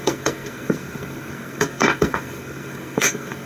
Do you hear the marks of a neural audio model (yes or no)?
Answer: yes